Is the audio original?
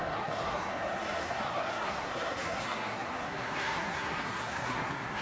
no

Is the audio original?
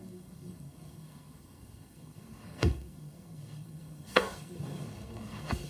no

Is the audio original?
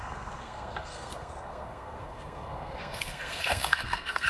no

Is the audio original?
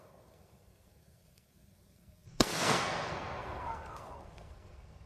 no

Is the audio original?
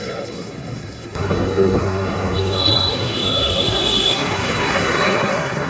no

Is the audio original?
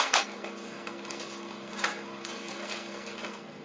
no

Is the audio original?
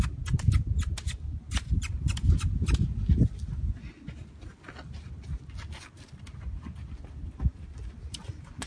yes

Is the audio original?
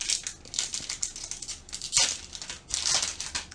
yes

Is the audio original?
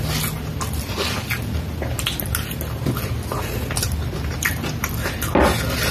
yes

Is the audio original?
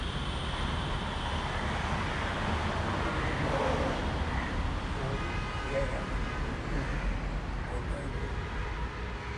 yes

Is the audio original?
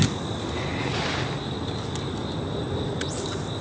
yes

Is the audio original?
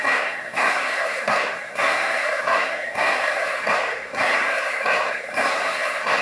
no